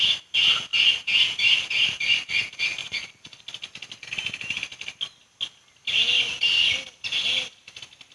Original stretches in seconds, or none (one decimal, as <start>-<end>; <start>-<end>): 0.0-2.8; 3.4-8.1